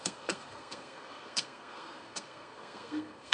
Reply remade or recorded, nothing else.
remade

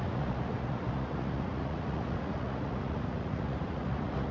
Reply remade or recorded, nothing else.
remade